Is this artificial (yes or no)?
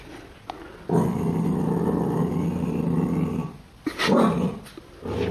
no